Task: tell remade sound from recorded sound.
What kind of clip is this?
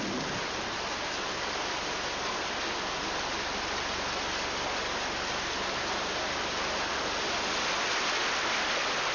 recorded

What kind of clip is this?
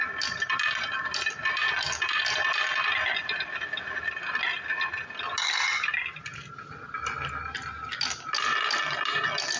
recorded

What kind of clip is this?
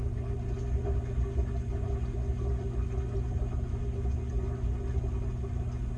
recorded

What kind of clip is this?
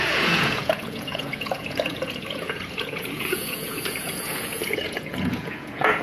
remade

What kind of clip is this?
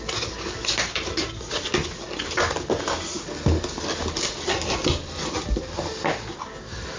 recorded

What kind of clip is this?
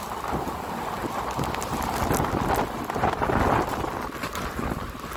recorded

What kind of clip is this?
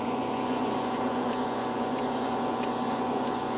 remade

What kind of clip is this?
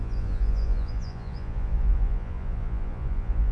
remade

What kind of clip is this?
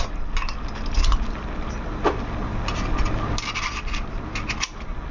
recorded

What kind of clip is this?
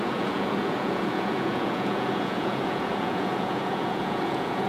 remade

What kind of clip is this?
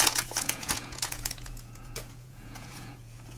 remade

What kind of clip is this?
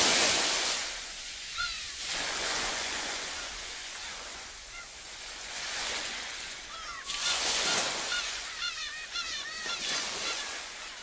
remade